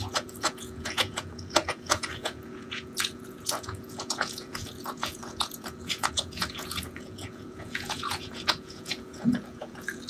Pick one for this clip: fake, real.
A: fake